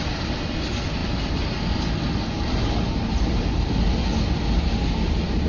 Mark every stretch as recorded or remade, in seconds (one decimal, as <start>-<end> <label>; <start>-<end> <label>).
0.0-5.5 recorded

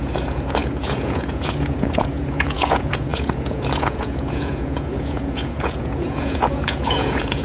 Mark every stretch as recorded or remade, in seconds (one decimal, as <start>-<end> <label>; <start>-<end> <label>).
0.0-7.4 remade

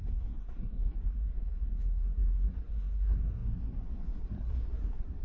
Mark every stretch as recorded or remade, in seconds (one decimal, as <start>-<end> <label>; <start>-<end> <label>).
0.0-5.2 remade

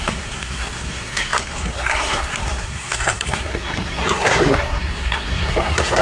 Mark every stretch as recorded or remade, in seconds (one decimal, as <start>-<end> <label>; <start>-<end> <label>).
0.0-6.0 remade

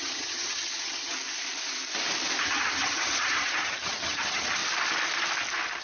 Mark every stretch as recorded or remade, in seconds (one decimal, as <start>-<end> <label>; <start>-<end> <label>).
0.0-1.1 remade; 1.1-2.4 recorded; 2.4-4.6 remade; 4.6-5.8 recorded

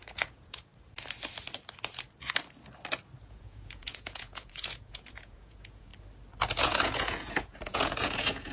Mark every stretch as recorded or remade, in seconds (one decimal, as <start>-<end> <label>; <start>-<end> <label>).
0.0-0.7 remade; 0.7-3.2 recorded; 3.2-5.9 remade; 5.9-6.5 recorded; 6.5-8.5 remade

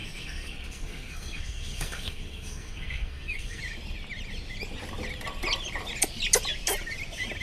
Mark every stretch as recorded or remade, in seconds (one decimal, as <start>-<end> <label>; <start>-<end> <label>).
0.0-3.6 remade; 3.6-7.4 recorded